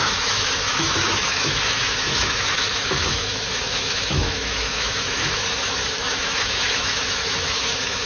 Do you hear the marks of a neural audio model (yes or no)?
yes